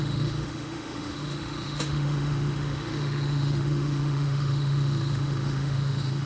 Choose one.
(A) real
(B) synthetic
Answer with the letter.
B